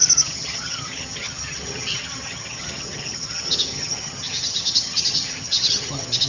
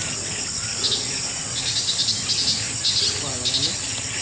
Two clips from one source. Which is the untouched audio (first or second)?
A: second